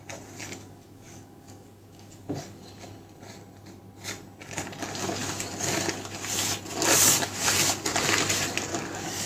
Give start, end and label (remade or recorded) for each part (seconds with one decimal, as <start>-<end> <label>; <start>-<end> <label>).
0.0-0.4 recorded; 0.4-2.6 remade; 2.6-8.7 recorded; 8.7-9.3 remade